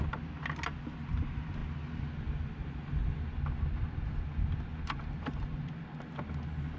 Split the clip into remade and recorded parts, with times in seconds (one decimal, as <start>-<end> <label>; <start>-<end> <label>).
0.0-4.7 recorded; 4.7-5.8 remade; 5.8-6.8 recorded